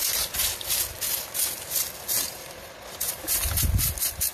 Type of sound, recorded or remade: recorded